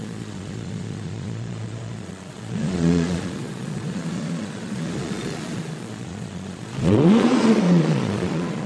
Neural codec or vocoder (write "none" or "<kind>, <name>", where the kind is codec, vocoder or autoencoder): vocoder, Vocos